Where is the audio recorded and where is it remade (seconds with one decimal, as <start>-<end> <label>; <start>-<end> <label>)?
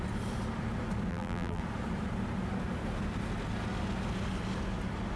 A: 0.0-1.1 recorded; 1.1-1.6 remade; 1.6-5.2 recorded